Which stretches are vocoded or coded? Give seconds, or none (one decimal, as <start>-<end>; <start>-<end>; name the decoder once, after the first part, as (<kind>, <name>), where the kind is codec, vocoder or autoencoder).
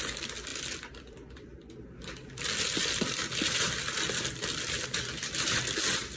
none